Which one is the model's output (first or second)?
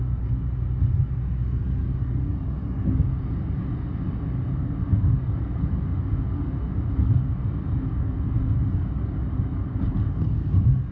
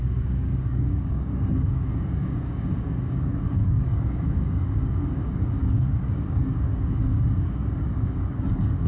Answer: second